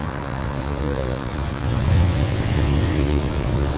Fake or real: fake